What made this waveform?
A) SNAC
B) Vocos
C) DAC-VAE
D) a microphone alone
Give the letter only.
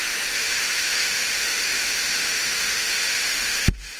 C